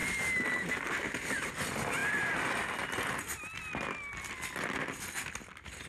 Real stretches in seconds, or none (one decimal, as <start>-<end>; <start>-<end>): 1.5-5.9